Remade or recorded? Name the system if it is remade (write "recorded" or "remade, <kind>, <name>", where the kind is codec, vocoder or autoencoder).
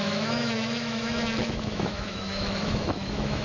remade, autoencoder, DAC-VAE